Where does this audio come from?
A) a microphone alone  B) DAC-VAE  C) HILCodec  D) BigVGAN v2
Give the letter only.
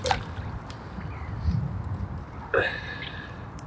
A